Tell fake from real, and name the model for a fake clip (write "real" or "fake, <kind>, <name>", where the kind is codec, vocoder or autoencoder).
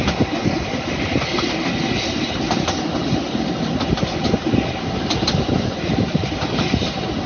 real